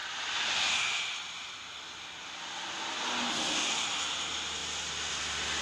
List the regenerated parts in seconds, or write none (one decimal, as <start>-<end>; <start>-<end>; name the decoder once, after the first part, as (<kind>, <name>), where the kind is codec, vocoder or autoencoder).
none